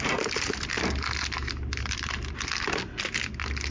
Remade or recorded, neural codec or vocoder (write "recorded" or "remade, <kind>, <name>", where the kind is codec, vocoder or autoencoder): recorded